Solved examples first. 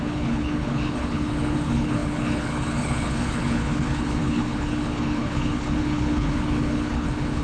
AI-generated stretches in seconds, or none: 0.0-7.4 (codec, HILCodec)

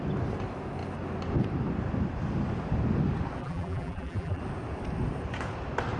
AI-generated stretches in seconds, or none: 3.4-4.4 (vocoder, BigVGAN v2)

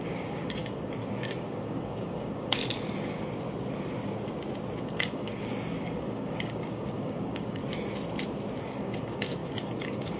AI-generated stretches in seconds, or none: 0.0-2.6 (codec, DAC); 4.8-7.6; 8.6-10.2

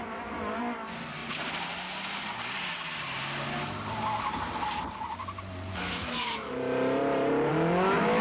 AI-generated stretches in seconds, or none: 5.7-6.5 (autoencoder, DAC-VAE); 7.5-8.2

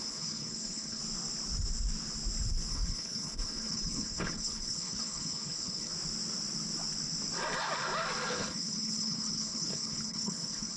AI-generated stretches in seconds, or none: 0.0-1.0 (codec, HILCodec); 2.7-5.9; 8.3-10.8